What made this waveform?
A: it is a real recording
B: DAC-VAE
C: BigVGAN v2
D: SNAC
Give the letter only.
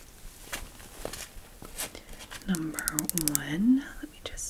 A